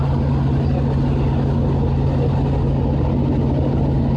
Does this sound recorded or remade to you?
recorded